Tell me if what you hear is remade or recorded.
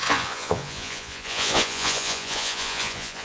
remade